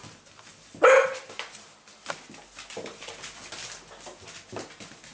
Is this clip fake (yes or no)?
no